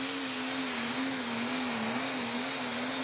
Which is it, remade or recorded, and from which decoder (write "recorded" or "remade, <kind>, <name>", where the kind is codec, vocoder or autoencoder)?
recorded